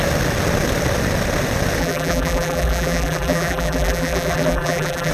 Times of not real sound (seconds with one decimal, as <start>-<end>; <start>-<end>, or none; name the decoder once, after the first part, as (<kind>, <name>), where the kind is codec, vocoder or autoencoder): 1.8-5.1 (vocoder, BigVGAN v2)